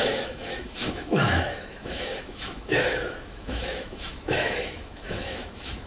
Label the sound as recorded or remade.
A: remade